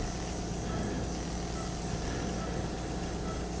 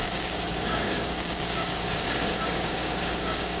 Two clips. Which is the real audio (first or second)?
first